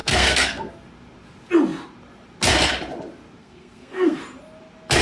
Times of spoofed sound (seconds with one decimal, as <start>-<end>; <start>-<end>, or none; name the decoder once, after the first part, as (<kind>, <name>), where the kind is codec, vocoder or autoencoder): 0.0-0.7 (codec, SNAC); 3.4-4.2